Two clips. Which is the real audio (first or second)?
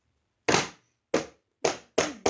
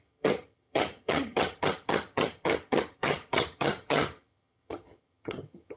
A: first